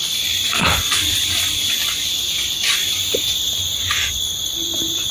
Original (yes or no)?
yes